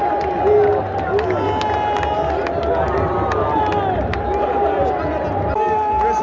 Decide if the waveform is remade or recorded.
recorded